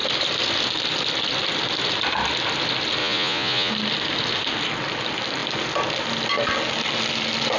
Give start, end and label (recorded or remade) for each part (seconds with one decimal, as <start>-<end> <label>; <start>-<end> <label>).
0.0-3.0 recorded; 3.0-3.7 remade; 3.7-7.6 recorded